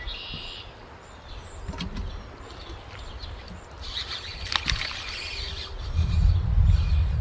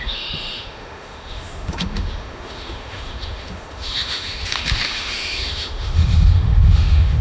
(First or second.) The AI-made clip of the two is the second